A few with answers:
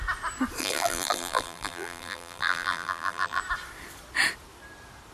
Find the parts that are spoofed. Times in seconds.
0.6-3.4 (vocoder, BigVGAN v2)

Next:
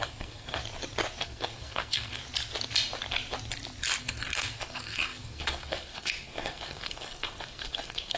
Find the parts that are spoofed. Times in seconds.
0.0-0.6 (codec, SNAC); 1.2-2.2; 4.0-8.2

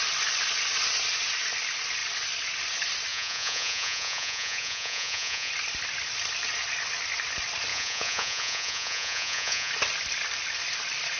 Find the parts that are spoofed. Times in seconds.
3.1-5.5 (vocoder, Vocos); 7.7-9.7

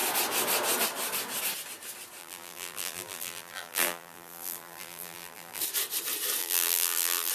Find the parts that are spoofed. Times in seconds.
2.2-5.6 (vocoder, BigVGAN v2); 6.4-7.3